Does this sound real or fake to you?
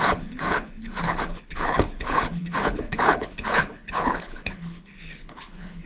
fake